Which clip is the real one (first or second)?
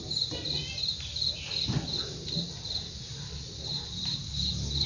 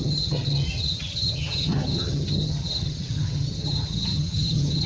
first